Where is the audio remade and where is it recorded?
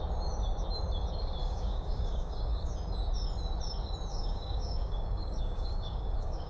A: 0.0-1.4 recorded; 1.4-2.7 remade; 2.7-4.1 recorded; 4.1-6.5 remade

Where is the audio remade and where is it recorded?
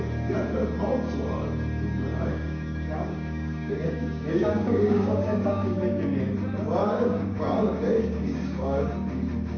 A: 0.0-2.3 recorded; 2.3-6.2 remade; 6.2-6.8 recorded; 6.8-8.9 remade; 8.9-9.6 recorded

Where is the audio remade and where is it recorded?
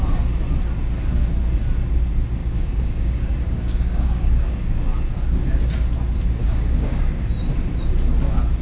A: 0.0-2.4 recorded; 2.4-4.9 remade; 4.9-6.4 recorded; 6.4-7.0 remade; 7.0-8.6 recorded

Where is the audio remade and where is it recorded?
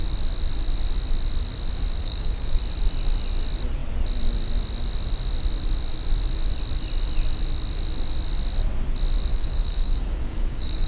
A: 0.0-2.0 recorded; 2.0-2.6 remade; 2.6-9.3 recorded; 9.3-10.9 remade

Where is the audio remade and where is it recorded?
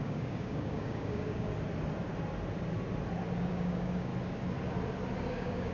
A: 0.0-1.5 remade; 1.5-3.5 recorded; 3.5-4.1 remade; 4.1-5.3 recorded; 5.3-5.7 remade